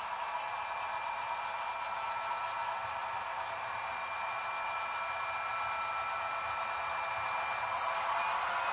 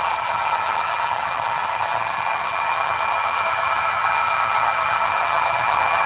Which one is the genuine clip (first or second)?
first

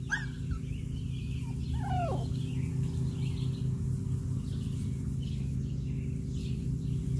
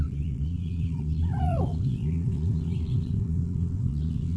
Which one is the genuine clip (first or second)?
first